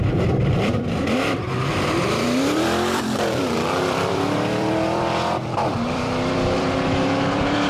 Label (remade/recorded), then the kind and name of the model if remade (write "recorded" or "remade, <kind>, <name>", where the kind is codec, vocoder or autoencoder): remade, vocoder, BigVGAN v2